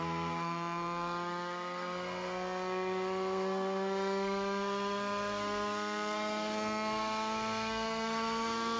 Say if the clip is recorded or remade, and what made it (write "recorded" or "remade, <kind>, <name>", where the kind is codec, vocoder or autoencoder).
remade, codec, SNAC